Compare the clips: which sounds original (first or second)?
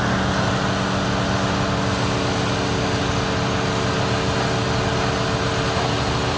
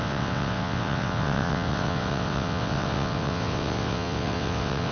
first